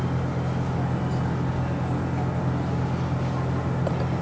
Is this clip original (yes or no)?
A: yes